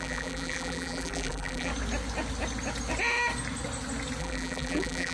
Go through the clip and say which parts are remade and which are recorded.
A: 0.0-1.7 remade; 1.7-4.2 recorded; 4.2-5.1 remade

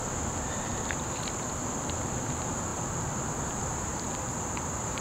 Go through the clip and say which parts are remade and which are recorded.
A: 0.0-0.7 remade; 0.7-1.4 recorded; 1.4-5.0 remade

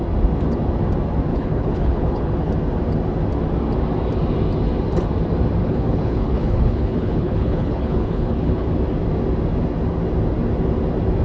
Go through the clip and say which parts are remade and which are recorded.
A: 0.0-1.3 recorded; 1.3-2.5 remade; 2.5-5.6 recorded; 5.6-8.7 remade; 8.7-11.2 recorded

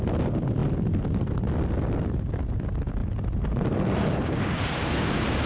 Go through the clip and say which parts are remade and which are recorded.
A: 0.0-3.0 recorded; 3.0-4.0 remade; 4.0-5.5 recorded

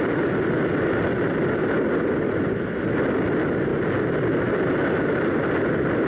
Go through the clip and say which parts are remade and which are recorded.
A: 0.0-6.1 recorded

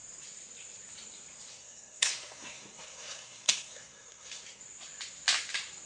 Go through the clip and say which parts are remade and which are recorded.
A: 0.0-1.5 recorded; 1.5-4.6 remade; 4.6-5.9 recorded

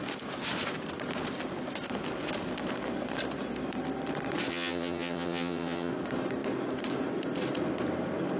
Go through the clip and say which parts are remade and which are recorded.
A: 0.0-4.5 recorded; 4.5-5.9 remade; 5.9-8.4 recorded